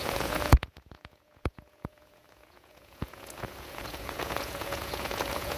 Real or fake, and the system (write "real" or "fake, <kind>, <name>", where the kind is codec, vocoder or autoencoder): fake, vocoder, Vocos